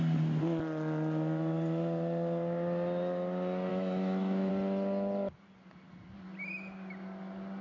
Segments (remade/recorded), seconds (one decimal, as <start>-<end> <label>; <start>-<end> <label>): 0.0-3.7 recorded; 3.7-4.5 remade; 4.5-7.6 recorded